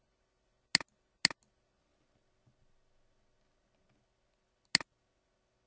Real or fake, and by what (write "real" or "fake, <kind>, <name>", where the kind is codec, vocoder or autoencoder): real